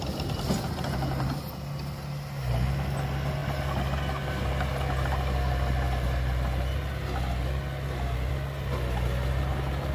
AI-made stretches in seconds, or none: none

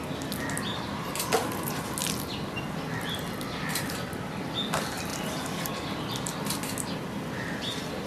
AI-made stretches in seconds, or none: none